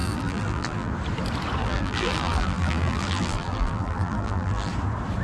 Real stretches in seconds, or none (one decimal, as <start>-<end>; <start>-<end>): 0.9-1.6; 4.7-5.2